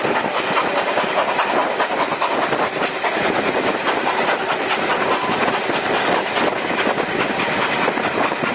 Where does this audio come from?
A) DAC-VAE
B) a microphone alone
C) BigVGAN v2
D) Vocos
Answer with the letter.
B